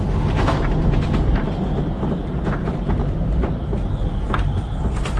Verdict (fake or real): real